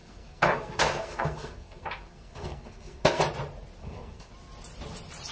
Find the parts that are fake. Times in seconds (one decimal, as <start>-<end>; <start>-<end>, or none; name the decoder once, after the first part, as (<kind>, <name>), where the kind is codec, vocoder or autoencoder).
0.0-3.2 (codec, SNAC); 3.8-4.3